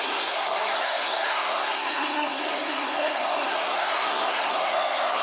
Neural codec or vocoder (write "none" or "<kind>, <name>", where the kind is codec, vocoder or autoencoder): codec, SNAC